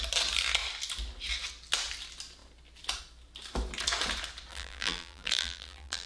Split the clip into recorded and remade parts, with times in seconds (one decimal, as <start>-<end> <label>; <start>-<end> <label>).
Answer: 0.0-4.5 recorded; 4.5-6.1 remade

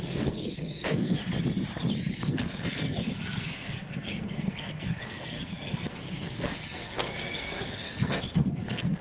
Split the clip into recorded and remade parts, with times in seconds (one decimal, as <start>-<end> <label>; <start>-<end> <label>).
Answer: 0.0-1.2 remade; 1.2-2.1 recorded; 2.1-9.0 remade

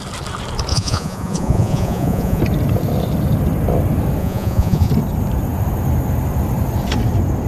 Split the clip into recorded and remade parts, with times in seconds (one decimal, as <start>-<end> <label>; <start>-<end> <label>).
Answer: 0.0-0.7 recorded; 0.7-2.4 remade; 2.4-4.2 recorded; 4.2-4.9 remade; 4.9-7.5 recorded

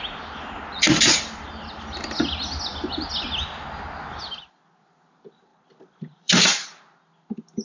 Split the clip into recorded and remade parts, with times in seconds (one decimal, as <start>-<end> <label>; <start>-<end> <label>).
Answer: 0.0-5.5 recorded; 5.5-6.8 remade; 6.8-7.6 recorded

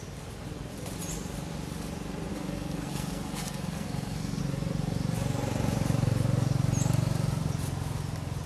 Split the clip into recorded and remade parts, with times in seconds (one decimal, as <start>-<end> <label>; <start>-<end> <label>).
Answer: 0.0-2.3 recorded; 2.3-4.4 remade; 4.4-8.5 recorded

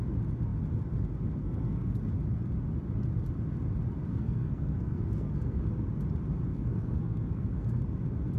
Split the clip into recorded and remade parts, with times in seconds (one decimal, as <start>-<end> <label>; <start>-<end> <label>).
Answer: 0.0-1.4 recorded; 1.4-2.0 remade; 2.0-4.1 recorded; 4.1-5.6 remade; 5.6-6.5 recorded; 6.5-7.8 remade; 7.8-8.4 recorded